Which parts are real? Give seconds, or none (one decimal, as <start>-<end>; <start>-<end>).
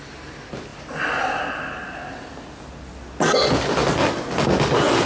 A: 0.0-5.1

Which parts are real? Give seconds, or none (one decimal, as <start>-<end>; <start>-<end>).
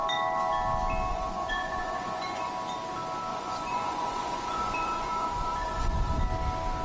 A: 0.0-1.1; 2.5-3.3; 6.2-6.8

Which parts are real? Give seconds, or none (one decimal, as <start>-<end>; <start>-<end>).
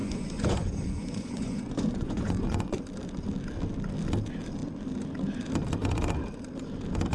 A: 2.8-7.1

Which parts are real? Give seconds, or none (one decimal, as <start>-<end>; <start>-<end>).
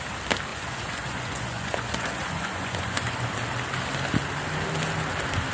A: 0.0-0.5; 3.3-5.5